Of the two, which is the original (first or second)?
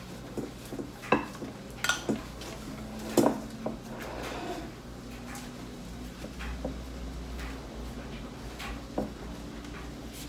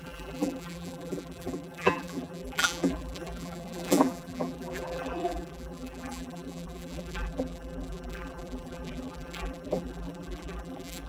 first